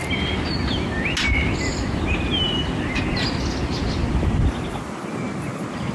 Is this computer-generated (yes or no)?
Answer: no